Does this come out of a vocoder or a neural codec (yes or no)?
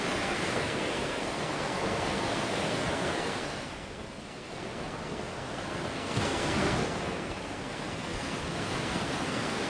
yes